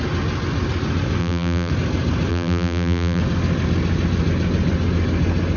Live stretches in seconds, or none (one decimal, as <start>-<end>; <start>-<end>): 0.0-1.2; 1.7-2.3; 3.2-5.6